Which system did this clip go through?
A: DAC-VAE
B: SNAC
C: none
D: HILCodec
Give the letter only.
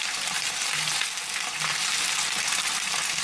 C